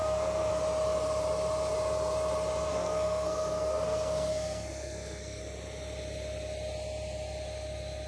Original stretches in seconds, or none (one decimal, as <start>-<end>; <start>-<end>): 0.5-2.7; 5.4-8.1